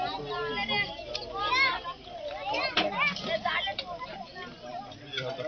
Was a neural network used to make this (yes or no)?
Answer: no